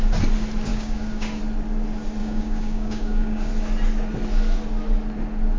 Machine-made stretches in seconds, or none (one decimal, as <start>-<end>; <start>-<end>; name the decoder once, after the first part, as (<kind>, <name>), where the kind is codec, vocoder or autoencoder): 0.7-1.4 (codec, DAC); 2.2-3.5